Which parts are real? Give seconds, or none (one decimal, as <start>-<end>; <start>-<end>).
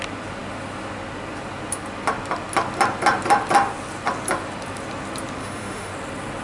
0.0-5.4; 5.9-6.4